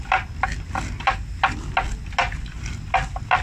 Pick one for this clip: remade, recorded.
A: recorded